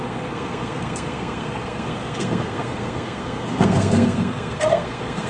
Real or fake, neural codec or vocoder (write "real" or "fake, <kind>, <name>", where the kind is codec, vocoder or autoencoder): fake, codec, SNAC